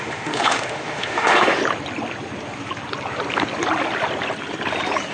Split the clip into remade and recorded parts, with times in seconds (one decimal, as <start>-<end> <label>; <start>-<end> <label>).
0.0-1.6 remade; 1.6-5.1 recorded